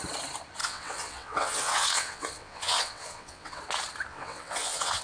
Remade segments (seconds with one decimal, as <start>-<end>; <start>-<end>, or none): 0.6-3.6; 4.1-5.0